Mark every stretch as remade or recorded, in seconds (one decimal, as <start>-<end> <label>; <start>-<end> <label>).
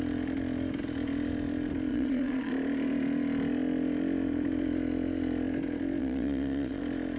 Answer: 0.0-1.9 recorded; 1.9-2.5 remade; 2.5-6.0 recorded; 6.0-6.8 remade; 6.8-7.2 recorded